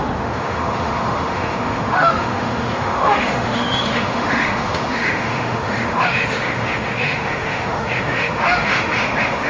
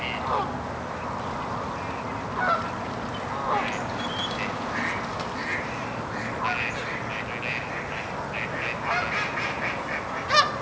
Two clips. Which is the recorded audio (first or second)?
second